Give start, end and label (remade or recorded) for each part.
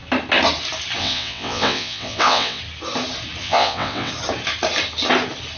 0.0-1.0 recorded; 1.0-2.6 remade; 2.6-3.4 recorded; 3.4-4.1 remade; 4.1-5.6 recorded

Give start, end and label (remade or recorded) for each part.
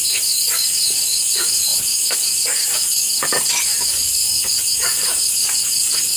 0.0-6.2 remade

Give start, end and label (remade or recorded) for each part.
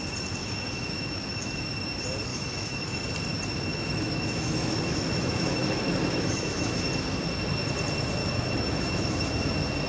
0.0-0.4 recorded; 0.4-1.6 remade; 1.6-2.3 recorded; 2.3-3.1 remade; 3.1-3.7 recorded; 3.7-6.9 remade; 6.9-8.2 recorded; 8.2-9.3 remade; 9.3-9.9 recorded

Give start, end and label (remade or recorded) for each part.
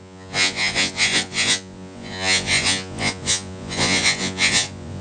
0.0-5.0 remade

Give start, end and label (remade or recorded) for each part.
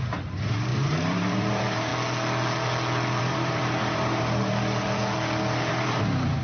0.0-1.9 remade; 1.9-3.2 recorded; 3.2-5.0 remade; 5.0-5.7 recorded; 5.7-6.4 remade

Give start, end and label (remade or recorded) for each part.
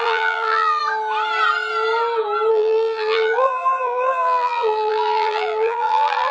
0.0-0.8 remade; 0.8-2.5 recorded; 2.5-6.3 remade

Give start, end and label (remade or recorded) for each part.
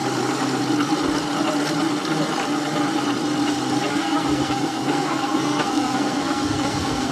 0.0-3.9 recorded; 3.9-7.1 remade